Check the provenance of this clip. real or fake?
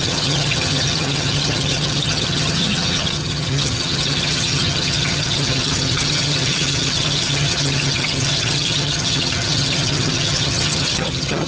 fake